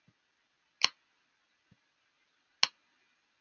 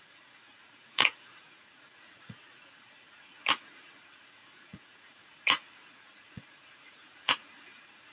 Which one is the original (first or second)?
first